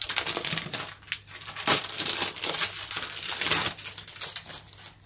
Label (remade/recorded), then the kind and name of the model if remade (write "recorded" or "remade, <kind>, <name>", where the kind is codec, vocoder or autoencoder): recorded